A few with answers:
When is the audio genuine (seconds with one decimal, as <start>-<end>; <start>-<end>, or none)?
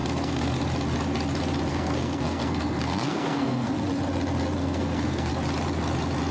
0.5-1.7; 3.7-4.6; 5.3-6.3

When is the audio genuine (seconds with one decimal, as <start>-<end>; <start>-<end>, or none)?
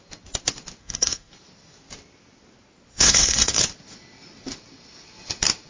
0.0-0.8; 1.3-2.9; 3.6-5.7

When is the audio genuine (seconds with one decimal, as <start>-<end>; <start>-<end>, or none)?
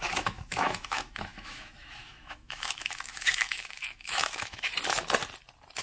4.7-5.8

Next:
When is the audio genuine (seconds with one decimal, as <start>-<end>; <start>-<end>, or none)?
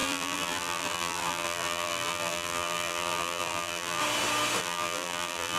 4.0-4.6